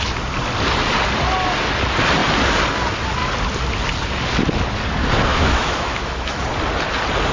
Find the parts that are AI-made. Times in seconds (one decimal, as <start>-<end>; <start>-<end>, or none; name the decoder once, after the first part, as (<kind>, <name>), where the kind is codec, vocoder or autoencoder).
5.3-6.4 (autoencoder, DAC-VAE)